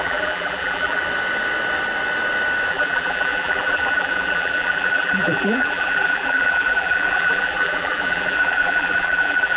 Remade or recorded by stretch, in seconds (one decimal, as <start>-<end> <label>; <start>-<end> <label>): 0.0-1.0 remade; 1.0-2.7 recorded; 2.7-9.6 remade